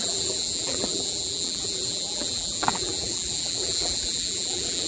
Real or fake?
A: fake